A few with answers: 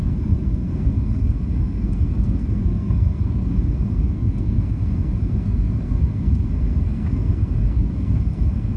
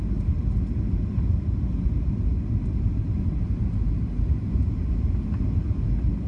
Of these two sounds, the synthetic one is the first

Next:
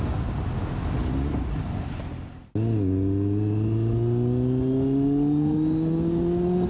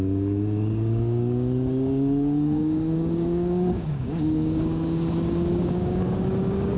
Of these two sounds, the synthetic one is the second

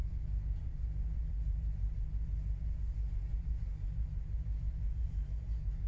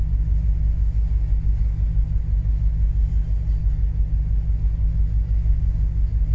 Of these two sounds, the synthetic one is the first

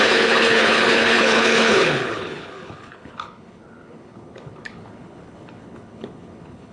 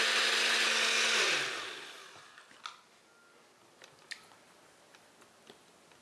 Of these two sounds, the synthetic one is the first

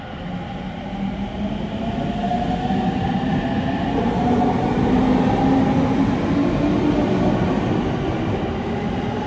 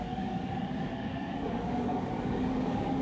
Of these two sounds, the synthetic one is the second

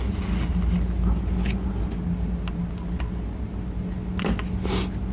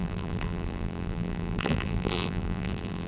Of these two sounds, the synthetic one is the second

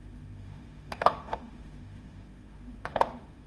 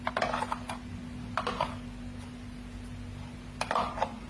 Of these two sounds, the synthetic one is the first